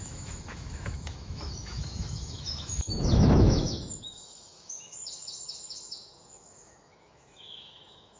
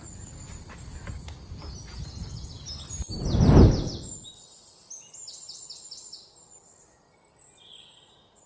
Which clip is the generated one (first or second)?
first